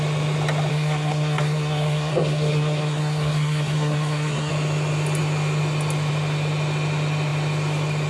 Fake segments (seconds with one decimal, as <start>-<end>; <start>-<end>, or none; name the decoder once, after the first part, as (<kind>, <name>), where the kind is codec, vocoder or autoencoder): 0.7-4.5 (codec, SNAC)